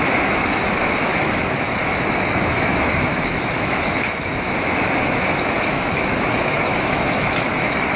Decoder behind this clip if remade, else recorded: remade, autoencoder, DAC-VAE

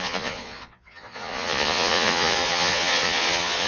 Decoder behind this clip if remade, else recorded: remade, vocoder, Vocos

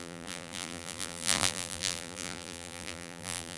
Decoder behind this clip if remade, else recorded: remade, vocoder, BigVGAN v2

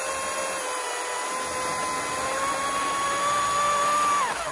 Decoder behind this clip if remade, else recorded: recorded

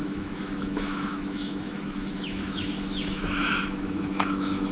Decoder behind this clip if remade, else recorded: remade, autoencoder, DAC-VAE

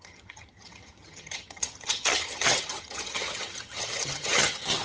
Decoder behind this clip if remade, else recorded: remade, vocoder, HiFi-GAN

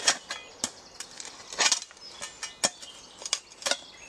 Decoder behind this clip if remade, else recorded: recorded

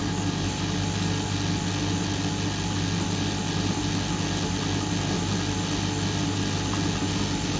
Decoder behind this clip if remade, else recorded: recorded